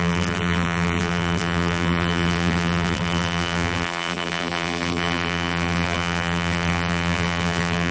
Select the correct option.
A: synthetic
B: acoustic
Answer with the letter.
A